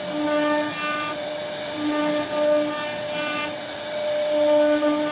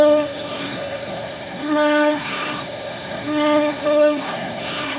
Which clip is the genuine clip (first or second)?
first